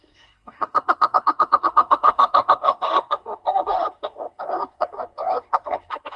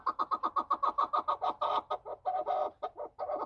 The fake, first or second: first